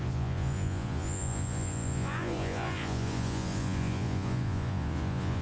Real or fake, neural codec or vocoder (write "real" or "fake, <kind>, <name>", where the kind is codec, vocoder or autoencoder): fake, vocoder, Vocos